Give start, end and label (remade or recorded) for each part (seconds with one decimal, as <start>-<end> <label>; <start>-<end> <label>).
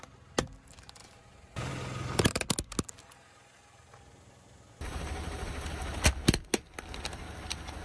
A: 0.0-1.0 recorded; 1.0-1.7 remade; 1.7-4.1 recorded; 4.1-6.0 remade; 6.0-7.8 recorded